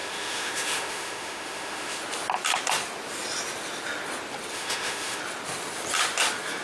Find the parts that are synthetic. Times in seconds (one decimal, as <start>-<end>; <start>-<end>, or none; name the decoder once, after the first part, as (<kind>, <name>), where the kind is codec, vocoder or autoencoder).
0.0-2.0 (autoencoder, DAC-VAE); 4.5-5.2